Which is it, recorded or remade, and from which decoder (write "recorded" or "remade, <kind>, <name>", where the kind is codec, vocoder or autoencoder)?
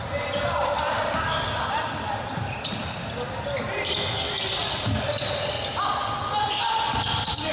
recorded